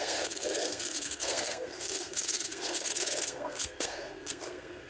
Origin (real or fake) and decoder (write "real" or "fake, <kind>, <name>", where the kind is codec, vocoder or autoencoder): fake, codec, SNAC